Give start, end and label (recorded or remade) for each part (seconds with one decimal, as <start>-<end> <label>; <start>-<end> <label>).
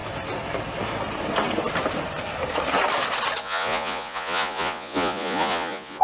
0.0-3.4 recorded; 3.4-6.0 remade